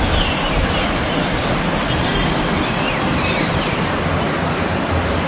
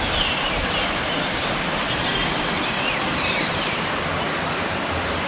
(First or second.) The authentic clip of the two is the first